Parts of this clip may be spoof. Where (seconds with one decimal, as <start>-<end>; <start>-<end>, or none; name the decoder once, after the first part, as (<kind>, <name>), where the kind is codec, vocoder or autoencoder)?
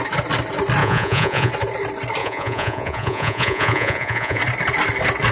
0.8-1.5 (vocoder, Vocos); 2.2-4.4